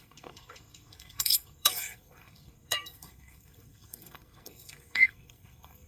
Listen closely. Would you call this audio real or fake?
fake